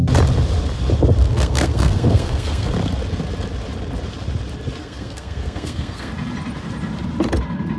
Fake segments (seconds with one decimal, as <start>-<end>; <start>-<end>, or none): 1.3-2.7; 4.8-6.1